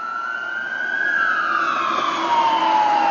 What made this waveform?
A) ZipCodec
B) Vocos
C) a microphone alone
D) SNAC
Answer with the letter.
C